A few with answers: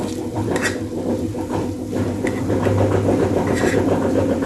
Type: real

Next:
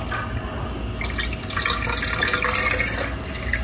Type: real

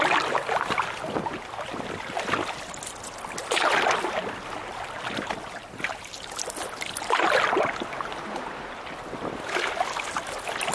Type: real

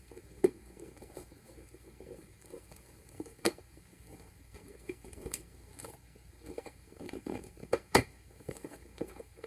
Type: fake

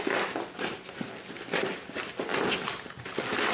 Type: real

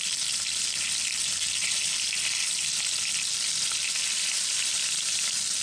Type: real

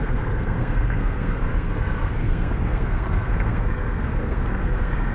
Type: fake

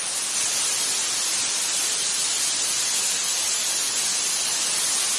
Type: real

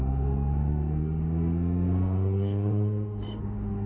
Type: fake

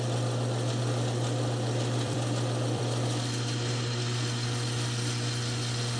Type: fake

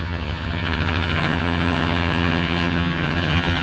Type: fake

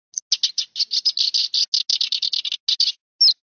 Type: real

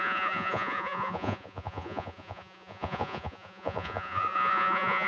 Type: fake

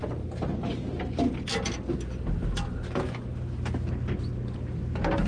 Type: real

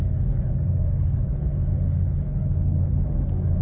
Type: fake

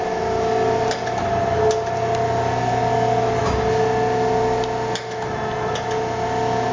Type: real